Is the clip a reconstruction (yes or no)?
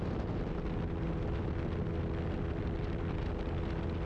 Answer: no